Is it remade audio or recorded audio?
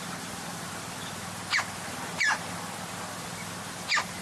recorded